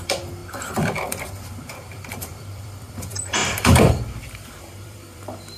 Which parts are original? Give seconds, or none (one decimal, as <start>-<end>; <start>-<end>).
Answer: none